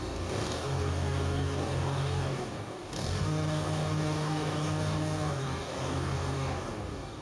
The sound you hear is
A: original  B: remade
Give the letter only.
B